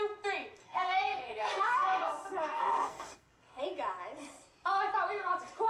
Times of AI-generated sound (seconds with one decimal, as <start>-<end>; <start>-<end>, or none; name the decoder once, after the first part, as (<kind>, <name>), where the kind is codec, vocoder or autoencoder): 0.6-3.6 (codec, SNAC)